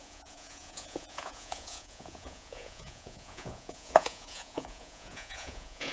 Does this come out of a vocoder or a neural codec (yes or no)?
yes